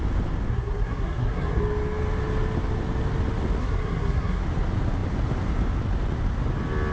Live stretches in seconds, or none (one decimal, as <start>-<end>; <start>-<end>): 0.0-0.5; 1.6-3.6; 4.4-6.9